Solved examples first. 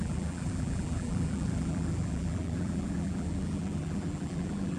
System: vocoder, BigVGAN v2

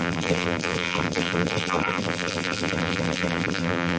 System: vocoder, BigVGAN v2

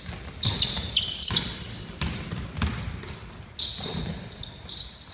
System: none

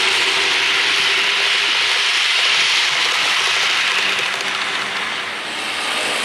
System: vocoder, BigVGAN v2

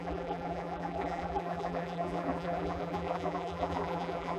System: vocoder, BigVGAN v2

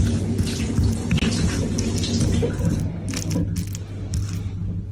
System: none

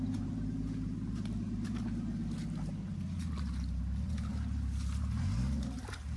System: vocoder, BigVGAN v2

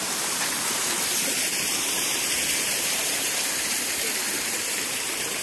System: vocoder, BigVGAN v2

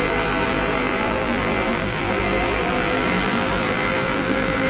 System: vocoder, BigVGAN v2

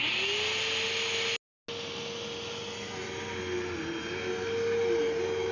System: none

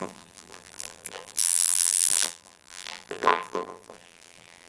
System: vocoder, BigVGAN v2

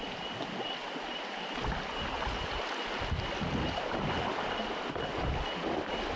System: none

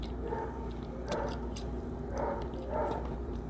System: vocoder, BigVGAN v2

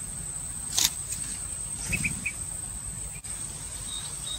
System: vocoder, BigVGAN v2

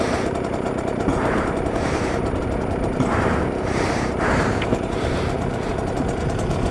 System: vocoder, BigVGAN v2